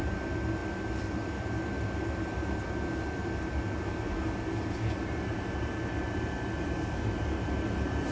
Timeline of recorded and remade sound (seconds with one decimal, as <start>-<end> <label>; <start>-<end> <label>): 0.0-8.1 recorded